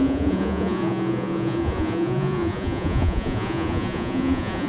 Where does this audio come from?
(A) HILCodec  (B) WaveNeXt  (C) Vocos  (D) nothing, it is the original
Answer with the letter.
C